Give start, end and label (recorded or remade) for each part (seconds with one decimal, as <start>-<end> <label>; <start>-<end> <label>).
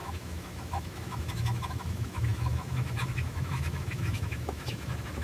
0.0-5.2 remade